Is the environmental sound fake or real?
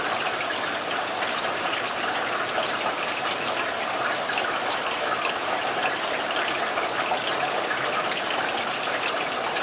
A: real